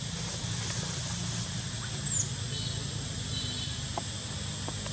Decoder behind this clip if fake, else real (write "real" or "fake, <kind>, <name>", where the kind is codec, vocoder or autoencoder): real